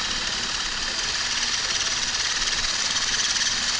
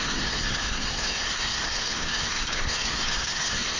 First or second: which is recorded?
first